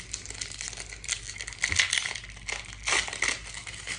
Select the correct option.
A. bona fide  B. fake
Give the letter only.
A